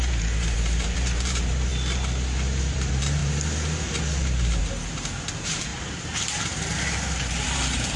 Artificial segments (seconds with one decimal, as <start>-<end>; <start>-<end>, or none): 0.0-1.7; 2.6-3.2; 4.6-8.0